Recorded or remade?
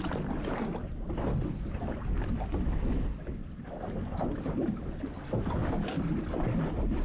recorded